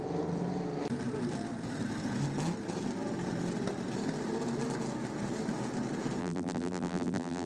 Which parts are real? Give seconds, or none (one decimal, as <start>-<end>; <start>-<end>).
0.0-6.2